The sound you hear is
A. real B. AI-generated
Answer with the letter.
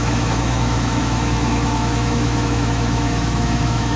B